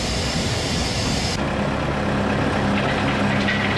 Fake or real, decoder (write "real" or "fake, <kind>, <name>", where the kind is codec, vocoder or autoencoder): real